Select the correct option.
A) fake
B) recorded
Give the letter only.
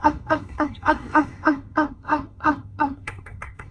A